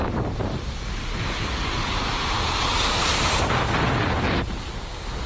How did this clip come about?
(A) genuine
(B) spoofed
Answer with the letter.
A